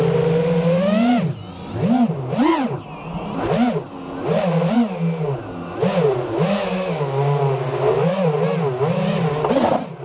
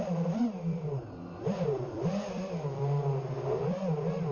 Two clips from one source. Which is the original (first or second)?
first